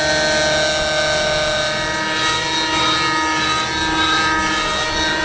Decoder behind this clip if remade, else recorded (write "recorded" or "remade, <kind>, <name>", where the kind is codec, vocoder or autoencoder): recorded